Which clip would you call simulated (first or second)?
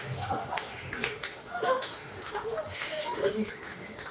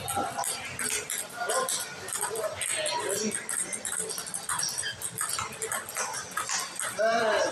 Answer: first